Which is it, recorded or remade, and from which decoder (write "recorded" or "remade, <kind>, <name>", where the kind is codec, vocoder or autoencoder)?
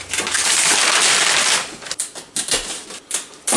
recorded